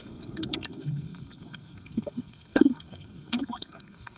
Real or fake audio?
fake